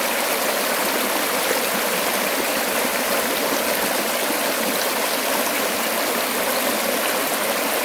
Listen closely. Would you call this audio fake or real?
real